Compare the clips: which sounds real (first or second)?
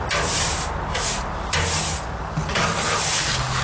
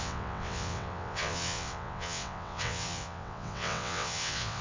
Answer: first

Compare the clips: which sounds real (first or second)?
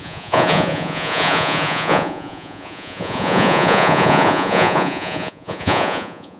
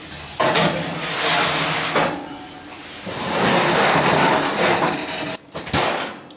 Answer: second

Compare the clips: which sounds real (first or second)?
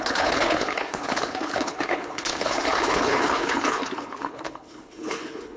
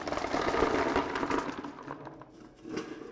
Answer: second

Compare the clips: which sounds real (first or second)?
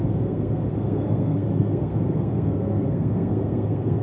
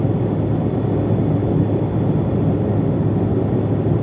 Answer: second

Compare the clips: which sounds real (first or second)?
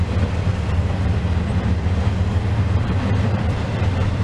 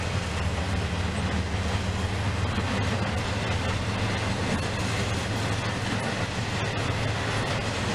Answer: second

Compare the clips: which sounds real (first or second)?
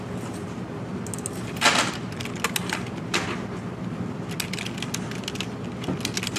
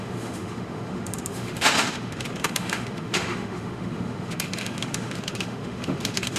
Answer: first